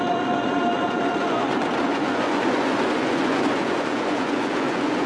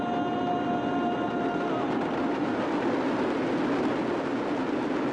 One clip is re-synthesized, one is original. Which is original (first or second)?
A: second